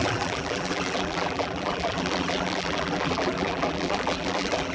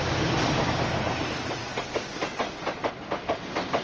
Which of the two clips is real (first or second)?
second